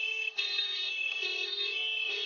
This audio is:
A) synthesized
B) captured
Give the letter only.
A